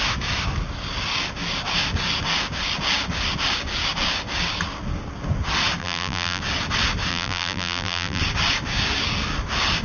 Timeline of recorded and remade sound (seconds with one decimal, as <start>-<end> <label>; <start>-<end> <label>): 0.0-5.8 recorded; 5.8-6.4 remade; 6.4-7.1 recorded; 7.1-8.2 remade; 8.2-9.8 recorded